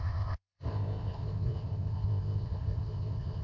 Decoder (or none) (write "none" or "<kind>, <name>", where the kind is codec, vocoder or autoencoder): codec, ZipCodec